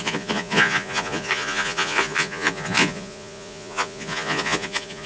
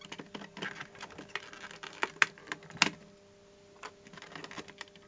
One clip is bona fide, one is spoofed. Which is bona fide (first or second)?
second